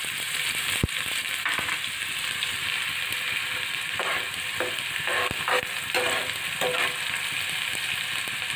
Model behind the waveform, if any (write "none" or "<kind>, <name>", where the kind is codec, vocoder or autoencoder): none